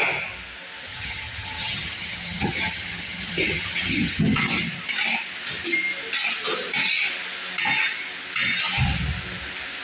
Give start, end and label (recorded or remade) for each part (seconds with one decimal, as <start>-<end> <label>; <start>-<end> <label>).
0.0-0.9 recorded; 0.9-4.4 remade; 4.4-9.8 recorded